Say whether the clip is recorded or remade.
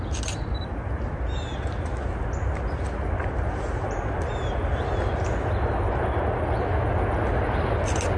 recorded